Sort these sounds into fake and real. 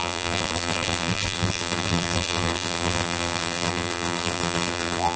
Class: fake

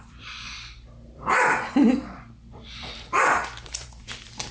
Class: fake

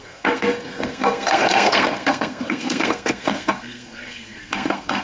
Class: fake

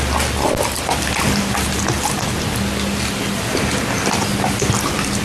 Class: real